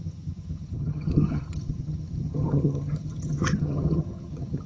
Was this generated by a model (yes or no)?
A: yes